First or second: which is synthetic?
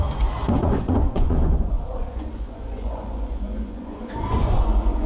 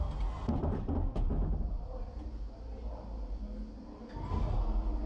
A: first